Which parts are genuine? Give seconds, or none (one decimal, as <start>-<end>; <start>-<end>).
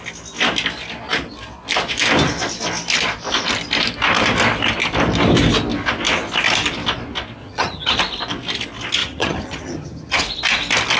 0.0-7.4; 8.0-9.0; 10.2-11.0